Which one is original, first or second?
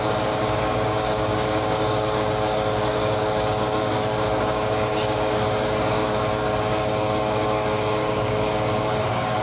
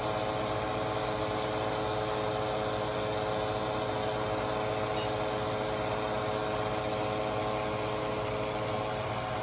second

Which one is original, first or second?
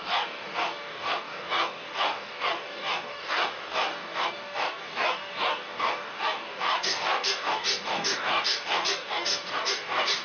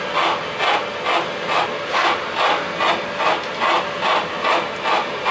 second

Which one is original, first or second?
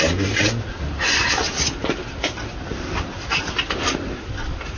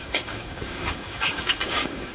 first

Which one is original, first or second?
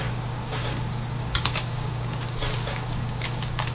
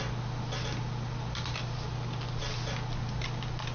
second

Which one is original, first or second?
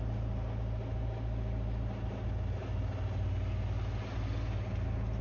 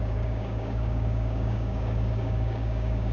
first